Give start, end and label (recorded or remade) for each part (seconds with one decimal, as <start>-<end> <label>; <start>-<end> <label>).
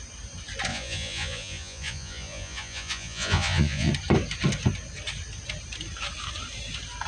0.0-0.7 recorded; 0.7-3.9 remade; 3.9-7.1 recorded